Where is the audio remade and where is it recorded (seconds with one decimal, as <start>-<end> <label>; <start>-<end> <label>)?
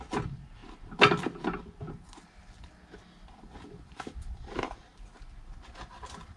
0.0-6.4 recorded